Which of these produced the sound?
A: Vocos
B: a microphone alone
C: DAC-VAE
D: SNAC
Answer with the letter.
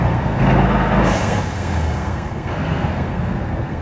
D